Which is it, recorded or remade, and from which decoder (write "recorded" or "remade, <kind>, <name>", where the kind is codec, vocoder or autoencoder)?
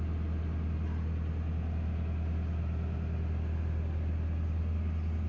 recorded